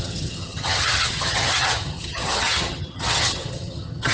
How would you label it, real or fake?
fake